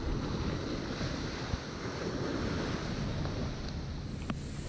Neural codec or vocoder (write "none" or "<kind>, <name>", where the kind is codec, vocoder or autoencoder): none